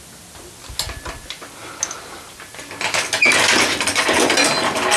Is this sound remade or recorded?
recorded